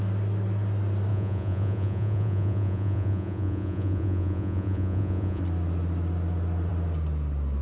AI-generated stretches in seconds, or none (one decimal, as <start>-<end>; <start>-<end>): 1.1-5.4